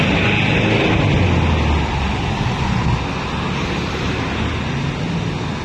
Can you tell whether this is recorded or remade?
recorded